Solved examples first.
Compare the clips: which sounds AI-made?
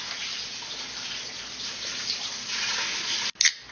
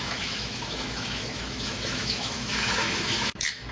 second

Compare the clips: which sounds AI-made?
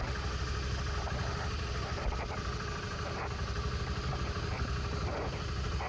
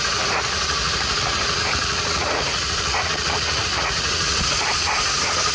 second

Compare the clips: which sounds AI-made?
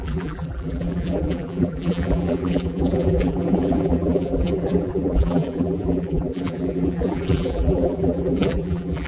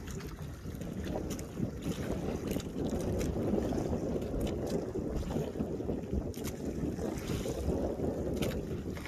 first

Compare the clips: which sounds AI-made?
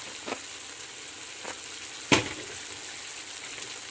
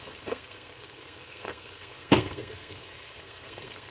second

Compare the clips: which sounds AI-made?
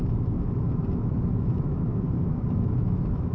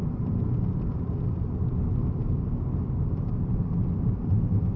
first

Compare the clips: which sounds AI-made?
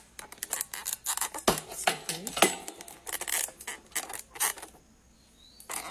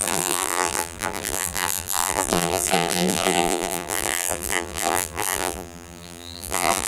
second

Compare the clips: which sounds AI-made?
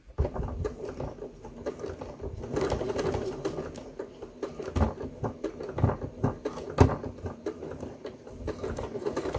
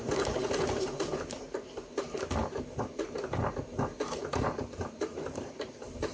second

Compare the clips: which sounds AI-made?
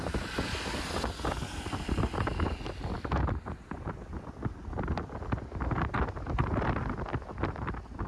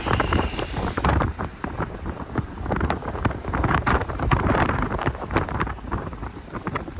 second